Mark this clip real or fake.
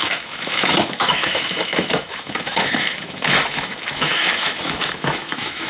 fake